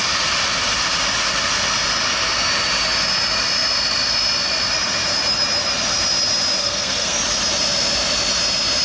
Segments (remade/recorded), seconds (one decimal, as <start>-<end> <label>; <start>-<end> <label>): 0.0-6.6 recorded; 6.6-7.2 remade; 7.2-8.8 recorded